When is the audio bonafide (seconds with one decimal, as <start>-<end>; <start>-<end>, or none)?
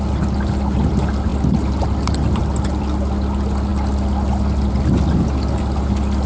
0.0-6.3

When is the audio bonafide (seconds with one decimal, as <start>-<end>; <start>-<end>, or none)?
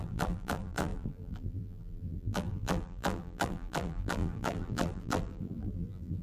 none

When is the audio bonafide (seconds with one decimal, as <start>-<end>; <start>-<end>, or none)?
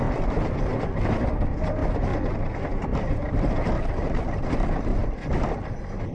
0.7-1.3; 2.1-3.3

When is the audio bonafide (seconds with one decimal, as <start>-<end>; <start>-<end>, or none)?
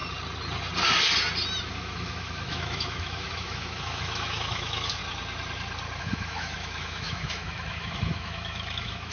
0.0-1.7; 5.0-6.0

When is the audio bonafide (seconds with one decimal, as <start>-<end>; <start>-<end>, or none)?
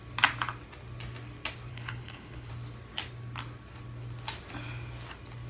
0.0-1.7; 2.5-5.5